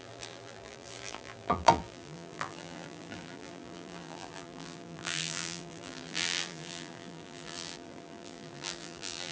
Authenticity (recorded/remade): remade